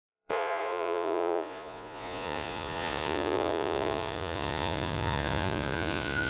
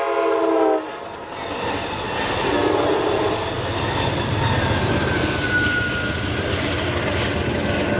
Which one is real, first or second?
second